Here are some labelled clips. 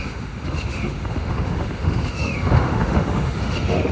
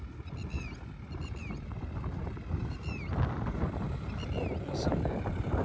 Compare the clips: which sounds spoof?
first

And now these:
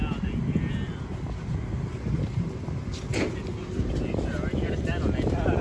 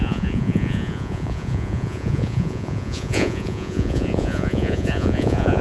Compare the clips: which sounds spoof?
second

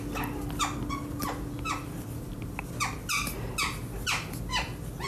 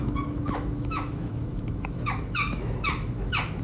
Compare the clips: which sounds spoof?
second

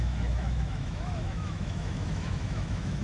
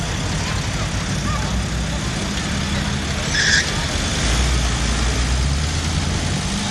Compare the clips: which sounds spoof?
first